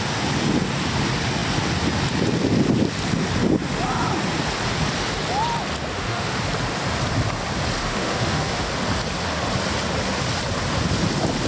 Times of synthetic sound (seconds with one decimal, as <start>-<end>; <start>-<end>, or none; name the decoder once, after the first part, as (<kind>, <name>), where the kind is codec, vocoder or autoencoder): 5.9-6.4 (autoencoder, DAC-VAE); 7.8-8.7